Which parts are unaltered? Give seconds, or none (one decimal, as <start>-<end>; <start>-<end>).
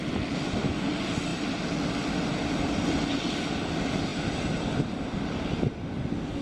0.0-6.4